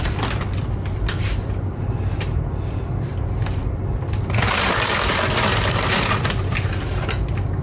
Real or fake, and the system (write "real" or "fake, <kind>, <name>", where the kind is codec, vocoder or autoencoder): fake, vocoder, BigVGAN v2